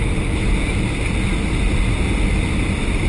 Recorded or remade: recorded